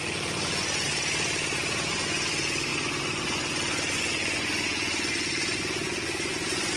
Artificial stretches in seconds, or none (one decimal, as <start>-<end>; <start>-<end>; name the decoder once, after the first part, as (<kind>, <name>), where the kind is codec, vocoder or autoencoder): 0.0-0.9 (vocoder, Vocos); 1.8-6.8